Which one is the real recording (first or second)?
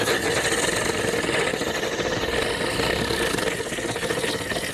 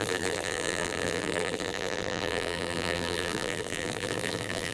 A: first